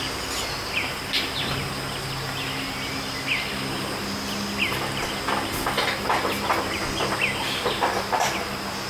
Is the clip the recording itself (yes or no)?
yes